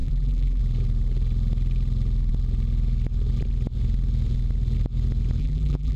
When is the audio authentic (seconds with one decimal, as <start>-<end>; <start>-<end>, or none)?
0.6-5.4